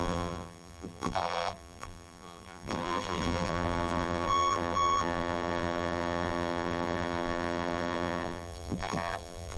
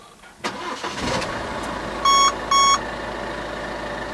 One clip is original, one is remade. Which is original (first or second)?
second